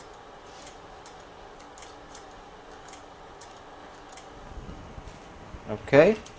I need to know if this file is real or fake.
real